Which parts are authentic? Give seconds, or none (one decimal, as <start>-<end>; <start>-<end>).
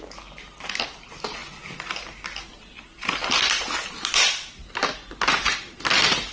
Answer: 0.0-6.3